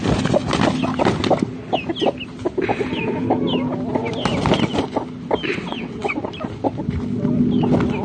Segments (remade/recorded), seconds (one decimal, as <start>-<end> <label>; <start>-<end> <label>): 0.0-5.5 recorded; 5.5-6.2 remade; 6.2-8.0 recorded